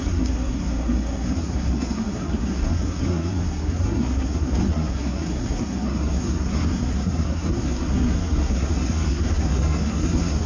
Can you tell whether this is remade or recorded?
remade